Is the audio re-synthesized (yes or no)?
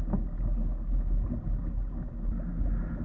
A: no